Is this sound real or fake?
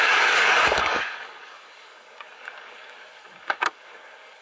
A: fake